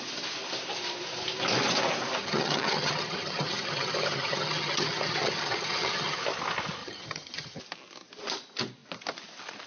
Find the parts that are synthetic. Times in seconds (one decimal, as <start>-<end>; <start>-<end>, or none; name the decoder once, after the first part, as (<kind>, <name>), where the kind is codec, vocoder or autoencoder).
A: 2.2-6.2 (vocoder, HiFi-GAN); 6.8-7.6